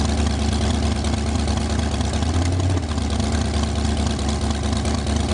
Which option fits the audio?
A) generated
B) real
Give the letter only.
B